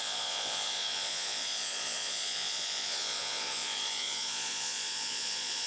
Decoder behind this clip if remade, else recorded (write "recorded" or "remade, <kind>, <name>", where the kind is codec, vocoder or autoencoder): remade, vocoder, Vocos